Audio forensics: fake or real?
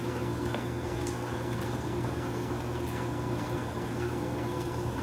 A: fake